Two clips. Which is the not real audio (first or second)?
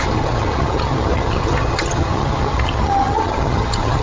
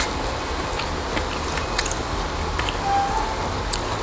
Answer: first